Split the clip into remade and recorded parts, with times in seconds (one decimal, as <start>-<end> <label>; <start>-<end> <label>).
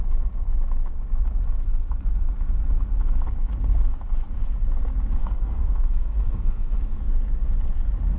0.0-5.2 recorded; 5.2-6.8 remade; 6.8-8.2 recorded